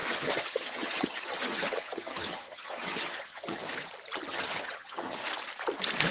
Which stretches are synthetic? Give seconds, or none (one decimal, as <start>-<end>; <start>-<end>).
0.0-3.7; 4.3-5.2